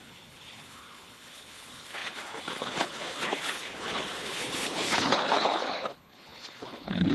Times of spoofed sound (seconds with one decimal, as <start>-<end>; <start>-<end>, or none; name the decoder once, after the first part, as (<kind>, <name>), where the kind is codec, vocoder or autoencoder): 0.0-7.1 (codec, HILCodec)